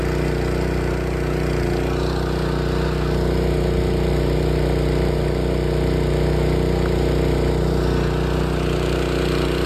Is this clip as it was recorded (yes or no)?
yes